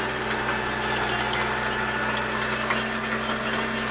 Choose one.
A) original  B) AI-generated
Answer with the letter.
A